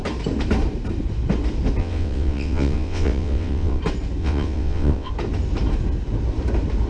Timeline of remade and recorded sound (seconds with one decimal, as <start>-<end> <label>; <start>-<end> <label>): 0.0-1.8 recorded; 1.8-3.8 remade; 3.8-4.2 recorded; 4.2-5.1 remade; 5.1-6.9 recorded